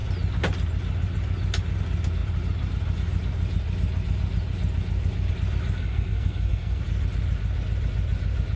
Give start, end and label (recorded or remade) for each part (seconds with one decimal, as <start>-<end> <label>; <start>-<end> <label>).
0.0-5.8 recorded; 5.8-6.8 remade; 6.8-8.6 recorded